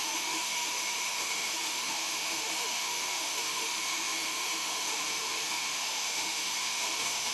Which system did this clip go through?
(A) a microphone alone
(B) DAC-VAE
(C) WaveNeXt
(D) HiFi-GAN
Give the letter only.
B